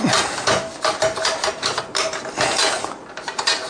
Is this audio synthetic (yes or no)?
no